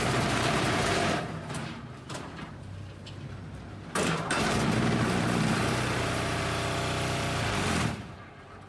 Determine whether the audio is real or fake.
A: fake